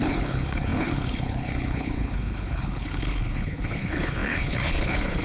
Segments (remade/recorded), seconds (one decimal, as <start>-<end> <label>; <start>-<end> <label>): 0.0-5.2 remade